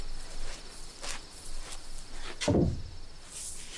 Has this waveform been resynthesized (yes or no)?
no